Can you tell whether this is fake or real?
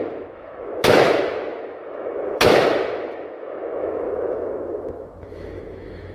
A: fake